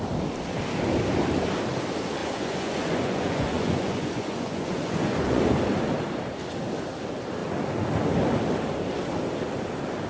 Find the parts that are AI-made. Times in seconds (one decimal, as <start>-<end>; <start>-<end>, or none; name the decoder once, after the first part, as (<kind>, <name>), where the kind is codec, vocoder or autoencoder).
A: 2.2-5.4 (vocoder, Vocos)